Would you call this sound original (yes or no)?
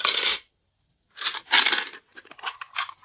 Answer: yes